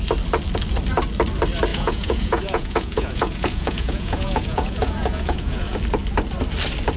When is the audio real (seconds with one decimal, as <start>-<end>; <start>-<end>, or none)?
0.0-1.7; 5.8-7.0